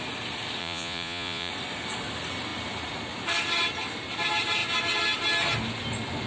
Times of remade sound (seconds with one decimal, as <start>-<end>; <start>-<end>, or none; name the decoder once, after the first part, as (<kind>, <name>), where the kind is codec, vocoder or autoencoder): 0.6-1.5 (vocoder, Vocos)